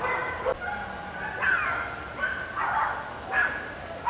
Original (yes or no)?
yes